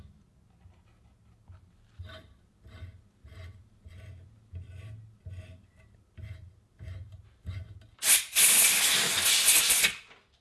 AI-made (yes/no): no